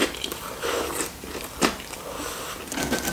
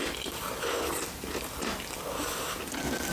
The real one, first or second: second